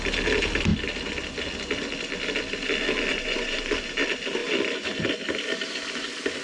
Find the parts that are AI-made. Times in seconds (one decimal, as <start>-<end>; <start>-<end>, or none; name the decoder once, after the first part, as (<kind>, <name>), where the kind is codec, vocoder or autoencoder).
3.1-3.7 (vocoder, Vocos)